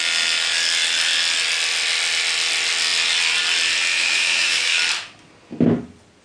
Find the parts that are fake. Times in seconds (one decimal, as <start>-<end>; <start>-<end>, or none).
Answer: 3.9-4.8